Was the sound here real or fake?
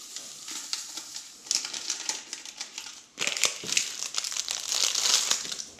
real